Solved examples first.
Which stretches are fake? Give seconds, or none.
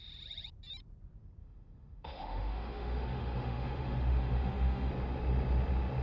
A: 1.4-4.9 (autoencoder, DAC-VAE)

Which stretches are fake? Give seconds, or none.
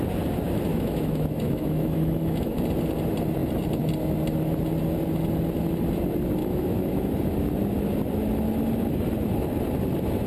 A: 0.7-2.6 (autoencoder, DAC-VAE); 6.4-7.1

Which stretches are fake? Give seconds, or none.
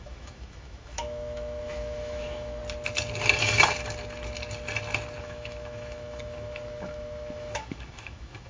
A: 0.0-2.6 (autoencoder, DAC-VAE); 5.2-8.5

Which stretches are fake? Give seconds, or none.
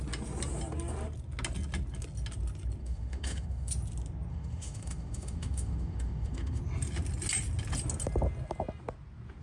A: 2.8-3.7 (autoencoder, DAC-VAE); 4.3-6.6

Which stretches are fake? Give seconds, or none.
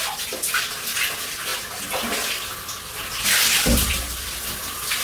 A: none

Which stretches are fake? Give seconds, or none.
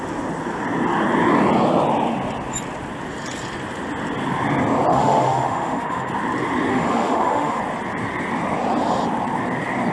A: 4.9-6.1 (autoencoder, DAC-VAE); 6.7-7.6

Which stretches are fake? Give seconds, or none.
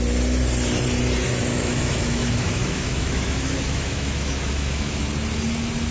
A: 1.5-5.0 (autoencoder, DAC-VAE)